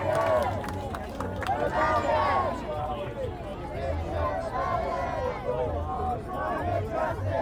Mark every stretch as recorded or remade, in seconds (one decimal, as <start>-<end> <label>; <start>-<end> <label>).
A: 0.0-7.4 recorded